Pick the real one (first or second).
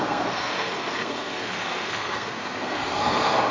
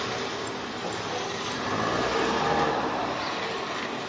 second